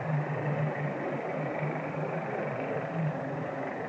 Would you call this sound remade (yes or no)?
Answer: yes